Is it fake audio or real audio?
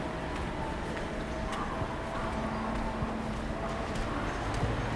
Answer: real